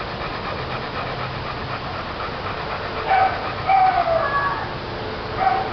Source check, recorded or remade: recorded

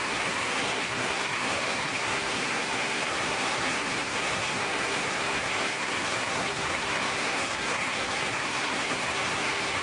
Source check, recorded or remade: remade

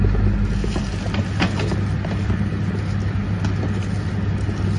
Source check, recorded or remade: recorded